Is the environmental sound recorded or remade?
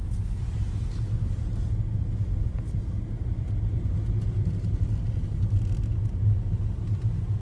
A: recorded